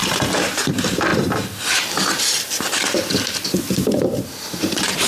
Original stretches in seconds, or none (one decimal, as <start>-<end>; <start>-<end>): 0.0-0.5